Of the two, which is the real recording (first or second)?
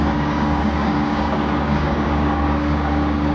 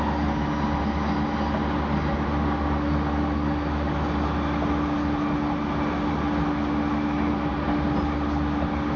second